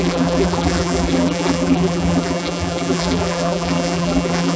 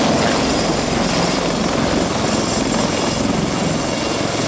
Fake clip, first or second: first